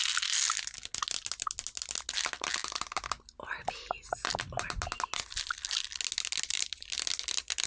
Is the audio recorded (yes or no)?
yes